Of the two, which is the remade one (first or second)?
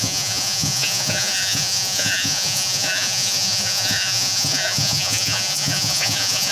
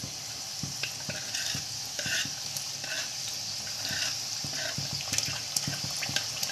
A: first